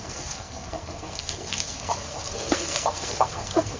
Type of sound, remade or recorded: remade